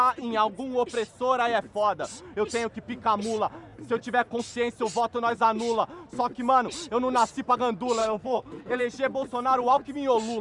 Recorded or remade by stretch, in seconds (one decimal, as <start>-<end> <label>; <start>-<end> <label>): 0.0-8.0 recorded; 8.0-8.8 remade; 8.8-10.4 recorded